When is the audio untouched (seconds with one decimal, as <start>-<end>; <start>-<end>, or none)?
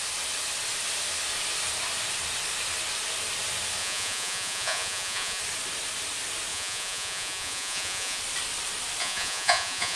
0.0-3.8; 5.4-6.5; 8.2-9.0